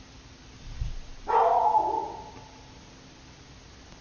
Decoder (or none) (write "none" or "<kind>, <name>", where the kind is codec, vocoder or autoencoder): none